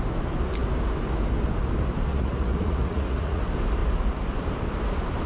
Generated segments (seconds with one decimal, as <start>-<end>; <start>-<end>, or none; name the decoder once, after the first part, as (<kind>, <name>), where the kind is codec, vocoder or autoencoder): 2.1-3.4 (vocoder, Vocos)